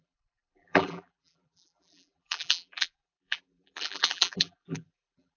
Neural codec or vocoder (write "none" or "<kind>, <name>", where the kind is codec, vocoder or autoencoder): vocoder, BigVGAN v2